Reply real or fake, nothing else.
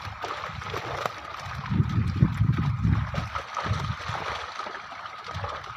real